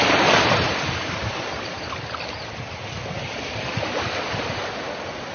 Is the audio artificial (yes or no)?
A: no